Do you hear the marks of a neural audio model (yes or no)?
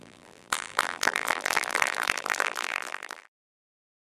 yes